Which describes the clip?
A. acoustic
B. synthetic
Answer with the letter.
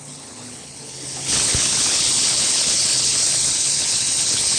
B